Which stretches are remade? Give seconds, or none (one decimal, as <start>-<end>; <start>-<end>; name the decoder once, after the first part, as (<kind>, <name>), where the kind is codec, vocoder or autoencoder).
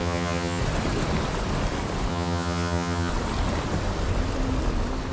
0.0-0.6 (vocoder, HiFi-GAN); 2.1-3.1